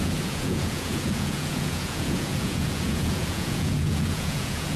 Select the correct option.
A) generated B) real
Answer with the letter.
A